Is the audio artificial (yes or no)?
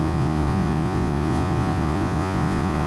yes